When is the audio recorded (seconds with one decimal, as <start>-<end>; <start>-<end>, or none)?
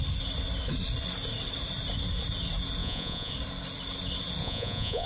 0.0-2.8; 3.3-4.4